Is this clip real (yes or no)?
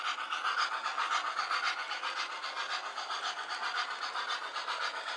yes